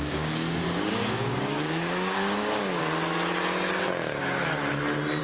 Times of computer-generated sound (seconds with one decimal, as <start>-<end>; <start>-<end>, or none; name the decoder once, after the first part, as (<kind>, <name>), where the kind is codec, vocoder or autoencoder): 0.0-2.8 (codec, DAC)